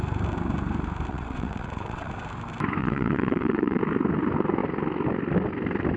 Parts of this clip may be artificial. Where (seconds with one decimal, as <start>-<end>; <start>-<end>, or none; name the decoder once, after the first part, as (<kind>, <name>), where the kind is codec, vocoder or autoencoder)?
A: 1.1-2.1 (vocoder, WaveNeXt); 2.8-3.8